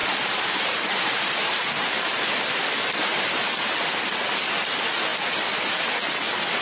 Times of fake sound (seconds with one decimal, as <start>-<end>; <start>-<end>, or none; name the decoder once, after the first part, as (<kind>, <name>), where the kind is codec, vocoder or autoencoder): 0.0-2.4 (vocoder, BigVGAN v2); 2.8-3.3

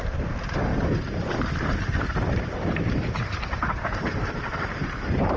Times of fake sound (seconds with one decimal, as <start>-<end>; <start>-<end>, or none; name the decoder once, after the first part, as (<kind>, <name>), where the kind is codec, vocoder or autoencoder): 0.0-5.4 (vocoder, BigVGAN v2)

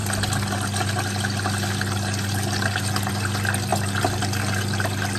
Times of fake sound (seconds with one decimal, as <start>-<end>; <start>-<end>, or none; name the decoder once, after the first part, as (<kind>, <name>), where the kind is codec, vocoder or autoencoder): none